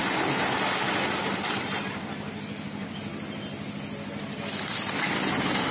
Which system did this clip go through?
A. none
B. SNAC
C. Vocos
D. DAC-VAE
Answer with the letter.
A